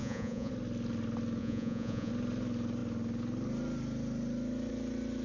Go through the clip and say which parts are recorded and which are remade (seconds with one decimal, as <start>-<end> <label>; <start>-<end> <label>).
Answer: 0.0-0.5 remade; 0.5-1.4 recorded; 1.4-2.1 remade; 2.1-5.2 recorded